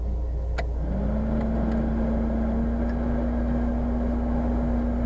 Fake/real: real